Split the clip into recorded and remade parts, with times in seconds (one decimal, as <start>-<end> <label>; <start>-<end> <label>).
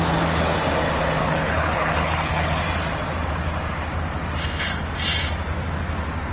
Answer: 0.0-1.2 recorded; 1.2-2.6 remade; 2.6-6.3 recorded